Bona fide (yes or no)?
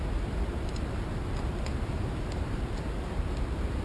yes